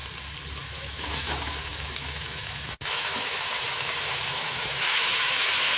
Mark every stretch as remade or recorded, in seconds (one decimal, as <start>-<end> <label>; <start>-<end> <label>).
0.0-0.6 recorded; 0.6-5.8 remade